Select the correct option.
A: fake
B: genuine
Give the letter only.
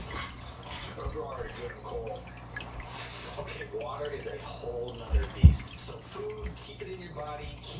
B